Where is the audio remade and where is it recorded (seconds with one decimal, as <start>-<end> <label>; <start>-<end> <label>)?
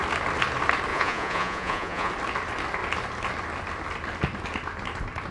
0.0-0.9 recorded; 0.9-2.1 remade; 2.1-5.3 recorded